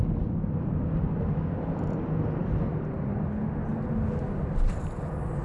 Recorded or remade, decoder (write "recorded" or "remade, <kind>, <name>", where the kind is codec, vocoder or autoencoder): recorded